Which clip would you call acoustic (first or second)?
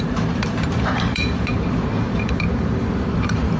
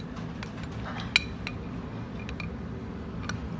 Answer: second